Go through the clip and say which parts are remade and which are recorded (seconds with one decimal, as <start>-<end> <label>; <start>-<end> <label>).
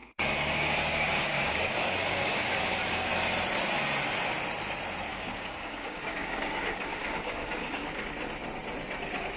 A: 0.0-3.1 remade; 3.1-5.1 recorded; 5.1-8.1 remade; 8.1-9.4 recorded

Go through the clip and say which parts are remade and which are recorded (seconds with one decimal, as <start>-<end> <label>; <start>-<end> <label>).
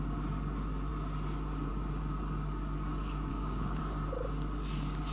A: 0.0-3.3 recorded; 3.3-3.8 remade; 3.8-5.1 recorded